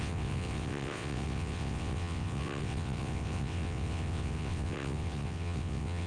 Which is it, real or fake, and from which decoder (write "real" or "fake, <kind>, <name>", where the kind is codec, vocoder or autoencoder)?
fake, vocoder, WaveNeXt